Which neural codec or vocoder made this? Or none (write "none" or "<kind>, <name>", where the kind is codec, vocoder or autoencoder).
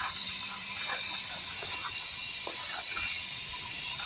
vocoder, WaveNeXt